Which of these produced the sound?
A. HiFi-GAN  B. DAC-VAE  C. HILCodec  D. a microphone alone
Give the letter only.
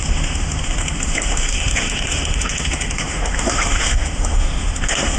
B